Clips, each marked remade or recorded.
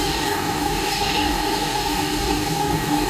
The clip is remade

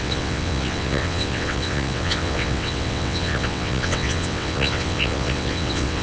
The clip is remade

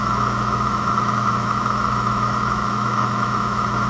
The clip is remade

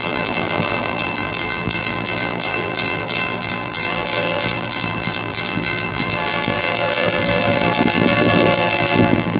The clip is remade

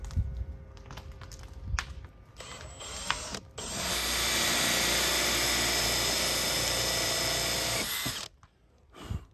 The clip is recorded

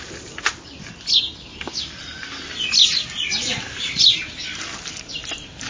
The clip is recorded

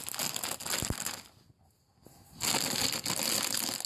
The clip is recorded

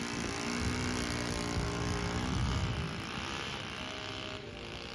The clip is recorded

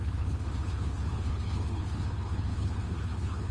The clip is remade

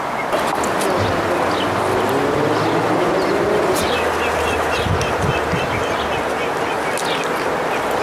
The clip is recorded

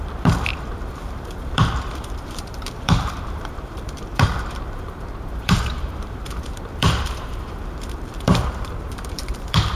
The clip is remade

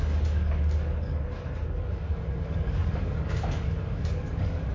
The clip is remade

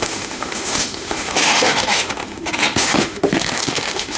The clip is remade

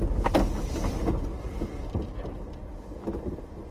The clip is recorded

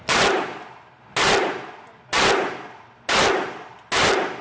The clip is recorded